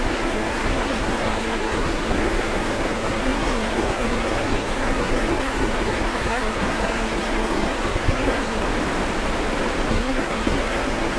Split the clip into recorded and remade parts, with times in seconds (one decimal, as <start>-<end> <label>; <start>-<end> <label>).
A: 0.0-8.7 remade; 8.7-9.9 recorded; 9.9-11.2 remade